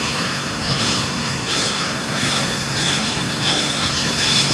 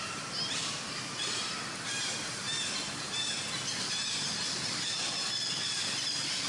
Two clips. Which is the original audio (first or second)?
second